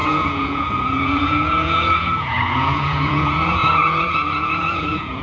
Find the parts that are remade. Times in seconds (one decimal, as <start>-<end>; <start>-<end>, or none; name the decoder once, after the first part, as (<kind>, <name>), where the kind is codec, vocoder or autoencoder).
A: 0.0-5.2 (vocoder, Vocos)